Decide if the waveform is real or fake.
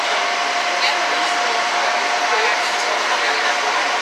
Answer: real